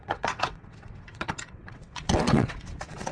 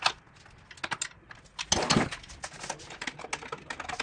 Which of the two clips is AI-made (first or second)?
first